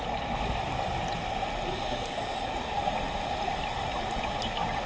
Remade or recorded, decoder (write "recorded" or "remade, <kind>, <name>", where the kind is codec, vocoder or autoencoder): recorded